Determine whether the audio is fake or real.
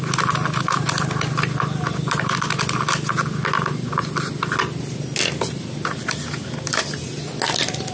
real